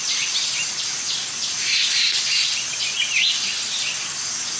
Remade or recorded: recorded